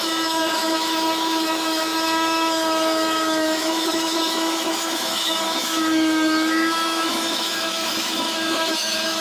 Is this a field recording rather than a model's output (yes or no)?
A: no